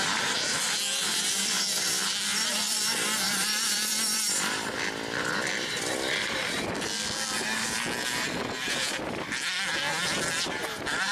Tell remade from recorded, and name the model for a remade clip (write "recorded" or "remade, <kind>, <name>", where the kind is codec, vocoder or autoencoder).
remade, vocoder, BigVGAN v2